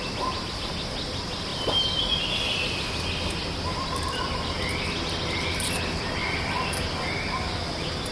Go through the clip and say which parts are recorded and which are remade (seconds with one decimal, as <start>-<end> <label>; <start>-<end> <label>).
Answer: 0.0-1.5 recorded; 1.5-2.2 remade; 2.2-6.2 recorded; 6.2-6.7 remade; 6.7-8.1 recorded